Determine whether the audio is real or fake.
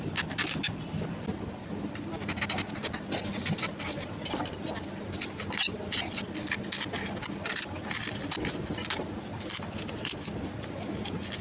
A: real